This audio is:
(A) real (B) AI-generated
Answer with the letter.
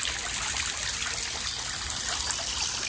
A